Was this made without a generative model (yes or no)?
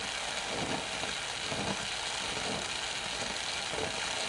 yes